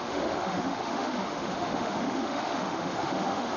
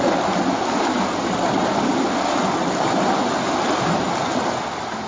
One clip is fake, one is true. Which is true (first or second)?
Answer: second